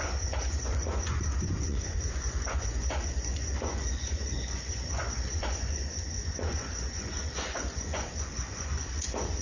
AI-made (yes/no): yes